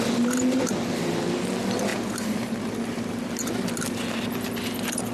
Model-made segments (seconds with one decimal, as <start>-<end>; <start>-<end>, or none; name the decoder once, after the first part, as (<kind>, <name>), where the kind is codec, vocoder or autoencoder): 1.9-3.3 (vocoder, BigVGAN v2)